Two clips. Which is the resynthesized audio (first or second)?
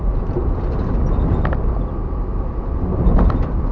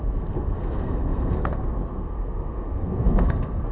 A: second